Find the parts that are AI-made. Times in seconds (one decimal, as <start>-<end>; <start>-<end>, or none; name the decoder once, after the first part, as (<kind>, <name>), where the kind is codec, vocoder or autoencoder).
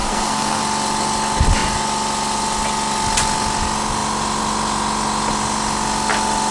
0.0-0.6 (codec, SNAC)